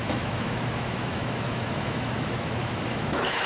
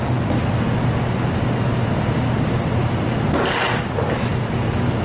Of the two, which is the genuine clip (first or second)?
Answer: second